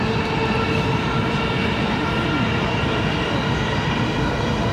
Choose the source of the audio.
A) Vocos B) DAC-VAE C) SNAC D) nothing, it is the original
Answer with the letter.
D